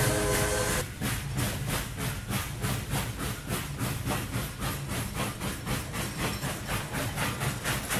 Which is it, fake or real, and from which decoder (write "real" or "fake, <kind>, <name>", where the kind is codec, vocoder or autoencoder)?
real